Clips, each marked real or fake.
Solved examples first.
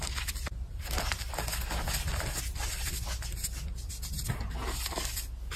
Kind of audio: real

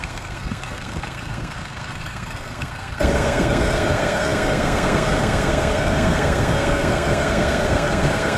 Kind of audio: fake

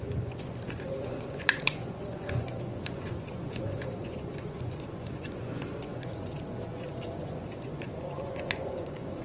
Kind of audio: fake